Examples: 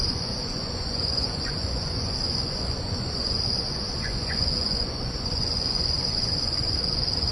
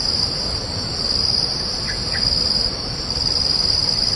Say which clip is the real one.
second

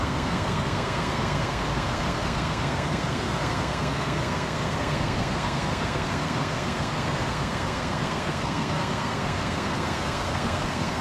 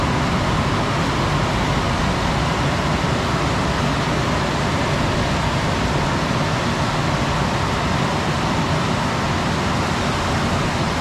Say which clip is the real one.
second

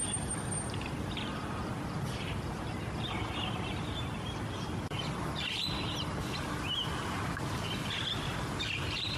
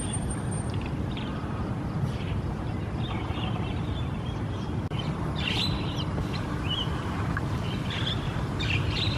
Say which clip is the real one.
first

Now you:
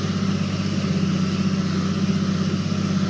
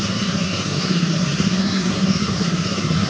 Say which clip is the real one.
first